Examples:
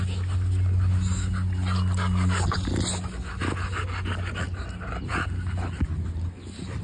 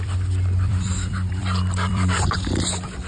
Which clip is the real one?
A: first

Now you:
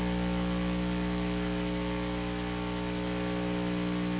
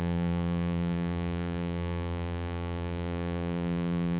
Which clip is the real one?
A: first